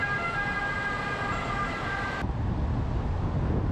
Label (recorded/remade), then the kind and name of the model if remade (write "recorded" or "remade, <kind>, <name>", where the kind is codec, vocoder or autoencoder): recorded